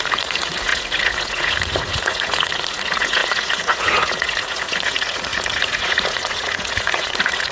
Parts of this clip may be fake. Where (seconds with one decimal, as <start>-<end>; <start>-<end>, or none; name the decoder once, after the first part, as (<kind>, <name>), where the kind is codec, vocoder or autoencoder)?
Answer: 0.0-7.5 (vocoder, Vocos)